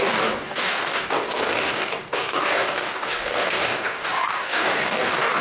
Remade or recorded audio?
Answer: remade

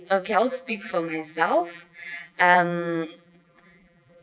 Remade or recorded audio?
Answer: remade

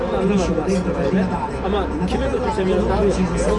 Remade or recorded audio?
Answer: recorded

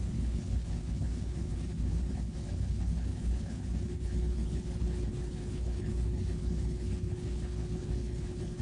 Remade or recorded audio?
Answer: remade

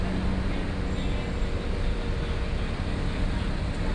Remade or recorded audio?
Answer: recorded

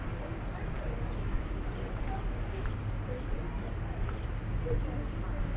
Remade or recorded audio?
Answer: recorded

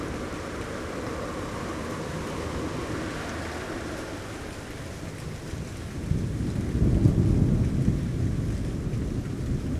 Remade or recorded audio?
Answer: recorded